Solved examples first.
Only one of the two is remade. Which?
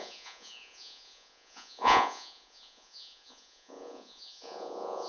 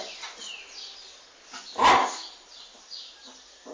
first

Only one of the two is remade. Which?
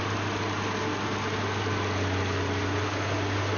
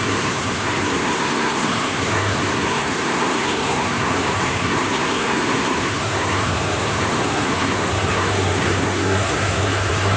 second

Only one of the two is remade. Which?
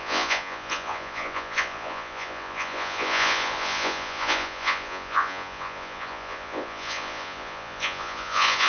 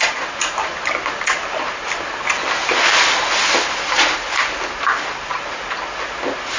first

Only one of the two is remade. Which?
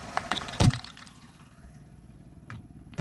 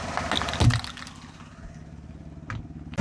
first